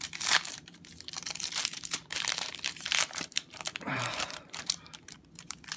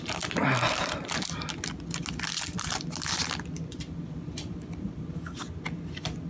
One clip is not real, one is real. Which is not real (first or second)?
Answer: first